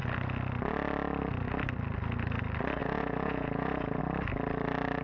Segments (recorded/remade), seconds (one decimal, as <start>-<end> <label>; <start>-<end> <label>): 0.0-2.8 recorded; 2.8-4.0 remade; 4.0-5.0 recorded